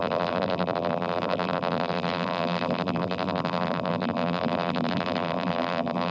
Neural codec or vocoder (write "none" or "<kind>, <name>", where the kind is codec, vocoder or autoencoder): vocoder, BigVGAN v2